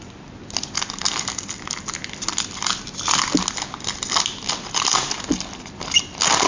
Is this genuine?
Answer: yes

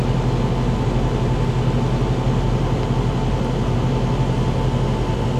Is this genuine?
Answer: yes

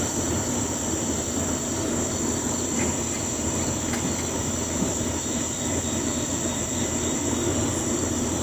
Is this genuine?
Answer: no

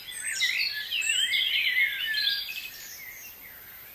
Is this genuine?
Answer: yes